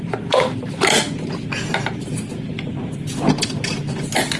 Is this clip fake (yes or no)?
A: no